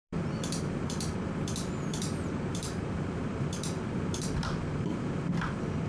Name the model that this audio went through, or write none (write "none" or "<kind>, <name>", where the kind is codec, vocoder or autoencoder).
vocoder, BigVGAN v2